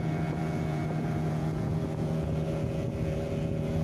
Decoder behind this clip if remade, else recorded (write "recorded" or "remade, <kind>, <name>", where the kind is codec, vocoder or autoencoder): remade, vocoder, Vocos